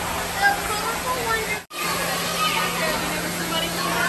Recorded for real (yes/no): yes